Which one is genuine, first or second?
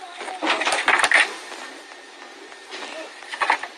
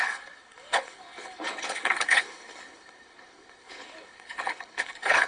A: first